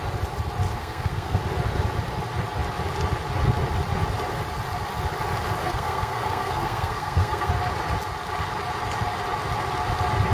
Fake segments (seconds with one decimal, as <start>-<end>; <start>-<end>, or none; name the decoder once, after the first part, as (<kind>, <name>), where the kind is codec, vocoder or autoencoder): 0.8-1.4 (codec, SNAC); 5.6-7.5